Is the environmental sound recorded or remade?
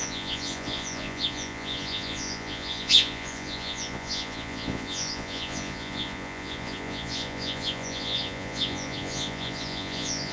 remade